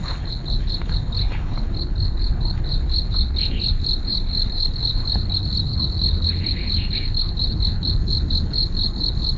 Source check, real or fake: fake